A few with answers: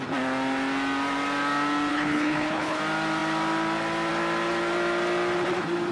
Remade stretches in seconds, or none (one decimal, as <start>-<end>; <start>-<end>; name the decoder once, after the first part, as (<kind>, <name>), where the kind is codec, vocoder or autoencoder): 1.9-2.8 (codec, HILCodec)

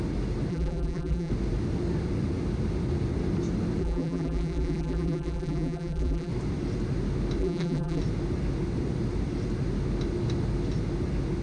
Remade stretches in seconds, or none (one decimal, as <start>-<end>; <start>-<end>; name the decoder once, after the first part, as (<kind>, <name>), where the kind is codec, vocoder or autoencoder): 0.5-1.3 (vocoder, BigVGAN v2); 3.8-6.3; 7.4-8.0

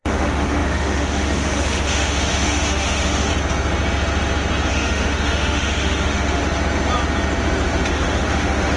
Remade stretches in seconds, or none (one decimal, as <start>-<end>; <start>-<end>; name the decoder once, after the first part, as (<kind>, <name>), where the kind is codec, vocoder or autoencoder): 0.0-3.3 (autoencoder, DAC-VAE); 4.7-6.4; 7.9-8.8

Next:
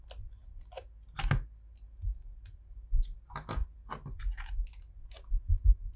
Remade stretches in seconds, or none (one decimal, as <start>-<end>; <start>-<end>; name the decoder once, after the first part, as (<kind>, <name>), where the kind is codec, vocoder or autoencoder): none

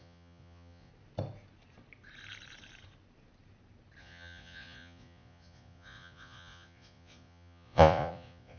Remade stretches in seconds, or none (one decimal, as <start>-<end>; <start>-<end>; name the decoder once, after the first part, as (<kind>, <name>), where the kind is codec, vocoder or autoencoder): 0.0-0.9 (vocoder, Vocos); 4.0-8.6

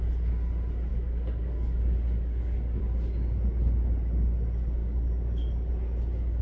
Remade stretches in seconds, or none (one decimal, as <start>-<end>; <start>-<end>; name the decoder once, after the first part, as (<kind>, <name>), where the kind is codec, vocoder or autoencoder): 0.9-2.8 (codec, DAC); 4.8-5.7

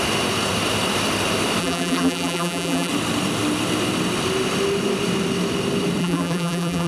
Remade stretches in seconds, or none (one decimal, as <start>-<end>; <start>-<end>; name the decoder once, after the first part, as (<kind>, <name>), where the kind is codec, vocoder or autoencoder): 1.6-2.9 (vocoder, BigVGAN v2); 6.0-6.9

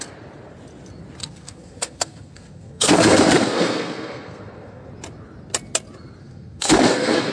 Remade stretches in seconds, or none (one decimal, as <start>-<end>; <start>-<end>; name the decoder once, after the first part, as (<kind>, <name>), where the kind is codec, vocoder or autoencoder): 1.2-4.9 (codec, SNAC); 6.2-7.3